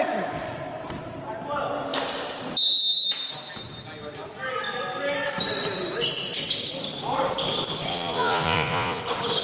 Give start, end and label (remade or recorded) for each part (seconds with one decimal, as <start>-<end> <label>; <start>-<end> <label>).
0.0-7.9 recorded; 7.9-9.0 remade; 9.0-9.4 recorded